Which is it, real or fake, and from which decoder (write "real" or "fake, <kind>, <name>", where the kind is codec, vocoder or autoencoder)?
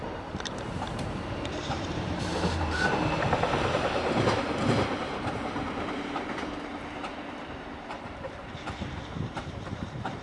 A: fake, vocoder, BigVGAN v2